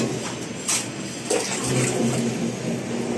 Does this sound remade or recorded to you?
recorded